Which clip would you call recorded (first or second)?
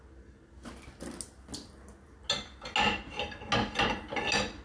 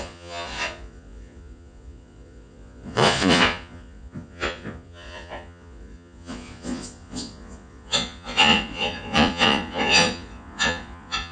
first